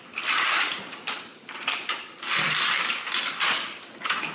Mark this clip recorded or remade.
recorded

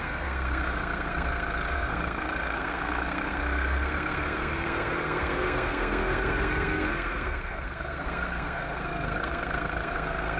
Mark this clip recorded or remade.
remade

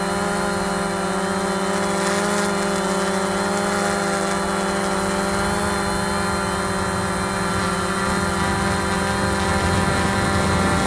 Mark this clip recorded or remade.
recorded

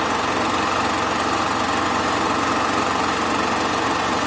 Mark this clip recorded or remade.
recorded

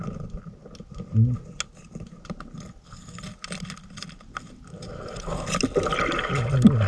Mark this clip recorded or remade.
recorded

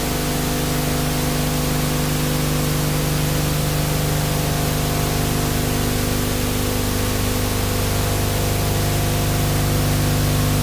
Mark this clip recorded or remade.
recorded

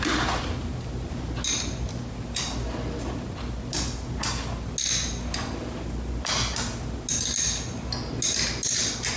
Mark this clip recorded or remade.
recorded